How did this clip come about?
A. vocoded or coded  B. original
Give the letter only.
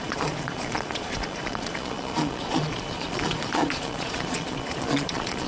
A